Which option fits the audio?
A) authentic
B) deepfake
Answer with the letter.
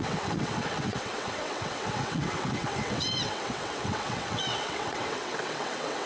B